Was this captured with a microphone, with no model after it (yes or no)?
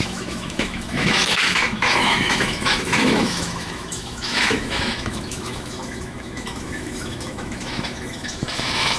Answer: no